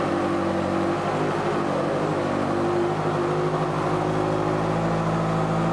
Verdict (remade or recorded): recorded